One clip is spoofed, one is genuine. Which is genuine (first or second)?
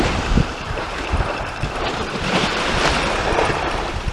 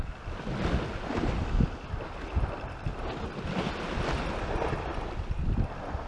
second